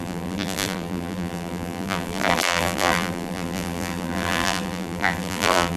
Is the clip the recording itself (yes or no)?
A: no